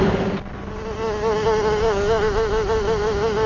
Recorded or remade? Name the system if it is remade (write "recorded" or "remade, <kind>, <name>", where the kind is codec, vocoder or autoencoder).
recorded